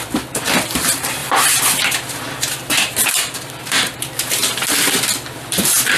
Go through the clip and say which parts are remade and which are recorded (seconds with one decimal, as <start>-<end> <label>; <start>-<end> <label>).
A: 0.0-6.0 remade